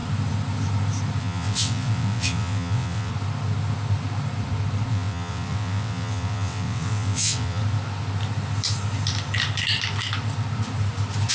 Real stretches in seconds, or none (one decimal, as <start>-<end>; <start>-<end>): 0.0-1.2; 3.1-4.9; 7.6-11.3